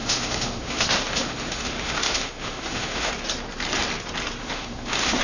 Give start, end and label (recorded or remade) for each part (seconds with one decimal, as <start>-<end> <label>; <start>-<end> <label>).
0.0-3.1 remade; 3.1-4.4 recorded; 4.4-5.2 remade